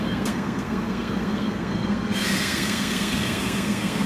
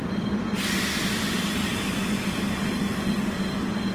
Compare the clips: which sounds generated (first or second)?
first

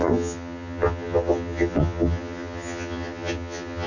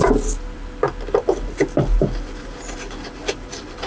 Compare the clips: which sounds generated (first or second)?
first